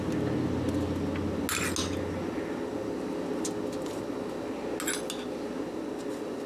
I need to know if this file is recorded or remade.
recorded